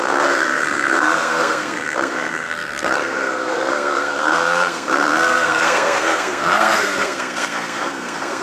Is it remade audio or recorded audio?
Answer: remade